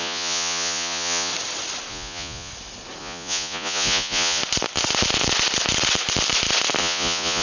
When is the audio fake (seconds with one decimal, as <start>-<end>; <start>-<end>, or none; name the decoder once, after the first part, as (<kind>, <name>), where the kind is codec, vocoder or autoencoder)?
0.0-1.3 (vocoder, Vocos); 1.9-2.5; 3.0-4.4; 6.8-7.4